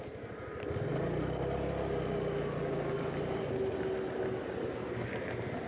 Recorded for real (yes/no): yes